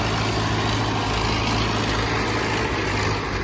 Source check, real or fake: real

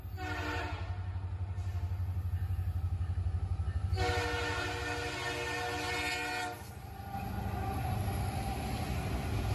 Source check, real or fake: real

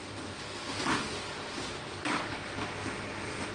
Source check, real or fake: real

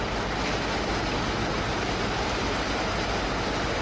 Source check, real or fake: real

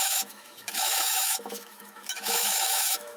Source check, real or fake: fake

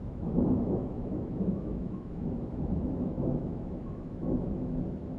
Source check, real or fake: fake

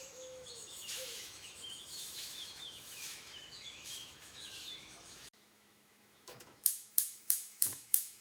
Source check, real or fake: fake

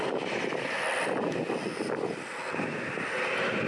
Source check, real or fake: real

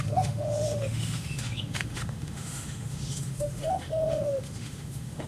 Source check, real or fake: fake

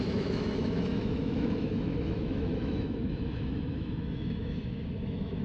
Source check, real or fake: fake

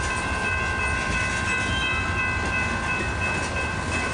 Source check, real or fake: real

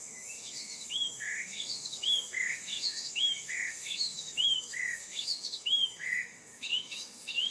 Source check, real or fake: fake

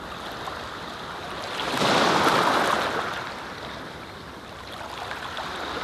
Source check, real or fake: real